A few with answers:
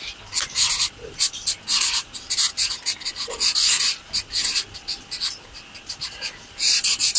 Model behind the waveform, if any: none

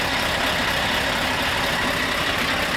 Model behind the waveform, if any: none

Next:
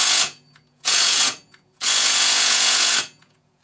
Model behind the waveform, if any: vocoder, Vocos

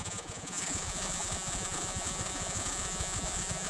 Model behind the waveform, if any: vocoder, Vocos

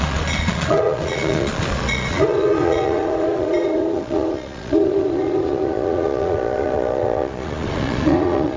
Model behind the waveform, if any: vocoder, Vocos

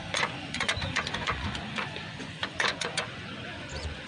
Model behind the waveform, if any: vocoder, Vocos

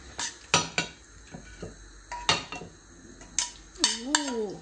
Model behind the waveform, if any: none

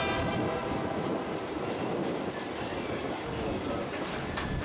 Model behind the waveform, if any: none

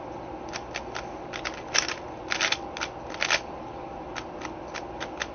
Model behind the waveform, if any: none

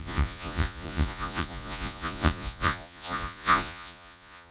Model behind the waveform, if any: vocoder, Vocos